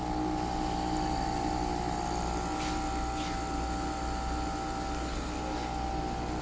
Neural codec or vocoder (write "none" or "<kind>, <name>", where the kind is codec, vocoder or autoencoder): none